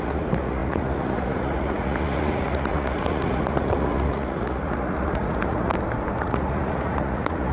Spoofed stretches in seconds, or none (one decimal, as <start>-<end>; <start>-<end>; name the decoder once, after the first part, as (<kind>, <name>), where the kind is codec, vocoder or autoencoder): 0.0-5.7 (vocoder, Vocos); 6.2-7.5